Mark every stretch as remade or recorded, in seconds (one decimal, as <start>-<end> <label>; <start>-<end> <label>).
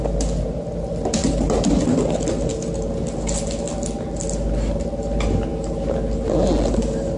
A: 0.0-7.2 recorded